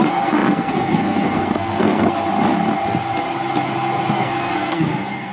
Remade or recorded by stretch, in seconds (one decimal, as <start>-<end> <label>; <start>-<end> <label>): 0.0-2.3 remade; 2.3-4.1 recorded; 4.1-5.3 remade